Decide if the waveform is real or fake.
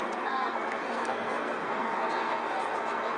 fake